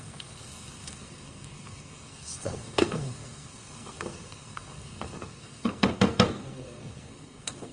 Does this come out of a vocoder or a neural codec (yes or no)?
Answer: yes